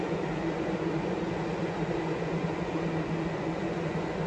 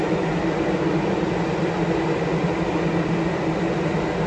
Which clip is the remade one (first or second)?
first